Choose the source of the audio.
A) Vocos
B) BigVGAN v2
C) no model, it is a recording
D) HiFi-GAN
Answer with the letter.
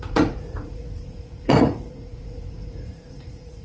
A